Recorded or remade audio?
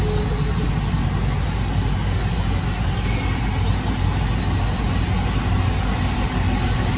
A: recorded